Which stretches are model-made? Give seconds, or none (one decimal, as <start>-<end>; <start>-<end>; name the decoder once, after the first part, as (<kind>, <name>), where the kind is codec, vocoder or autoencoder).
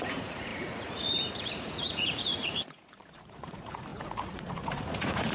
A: 0.0-5.3 (vocoder, Vocos)